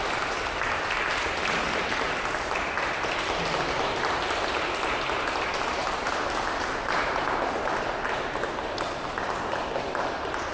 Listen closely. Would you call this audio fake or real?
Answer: real